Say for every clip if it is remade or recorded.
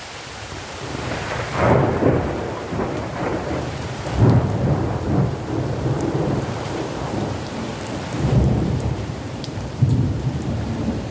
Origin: remade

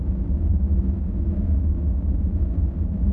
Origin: recorded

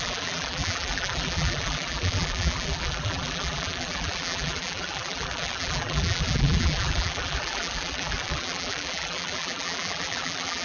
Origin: remade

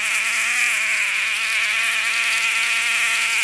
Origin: recorded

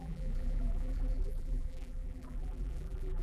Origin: remade